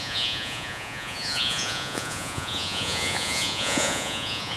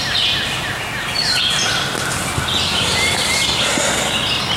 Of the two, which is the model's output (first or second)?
first